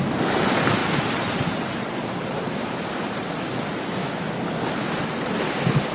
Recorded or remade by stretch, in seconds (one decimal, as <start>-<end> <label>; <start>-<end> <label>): 0.0-0.8 recorded; 0.8-3.5 remade; 3.5-5.9 recorded